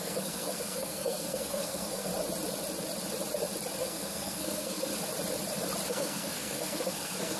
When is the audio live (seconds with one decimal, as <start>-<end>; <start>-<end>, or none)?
2.1-3.8; 4.9-5.9